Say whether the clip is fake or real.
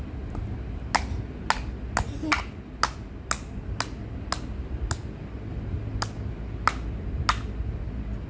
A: real